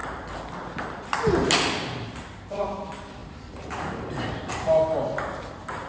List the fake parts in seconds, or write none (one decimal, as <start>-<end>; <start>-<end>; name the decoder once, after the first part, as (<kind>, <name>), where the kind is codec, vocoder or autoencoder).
none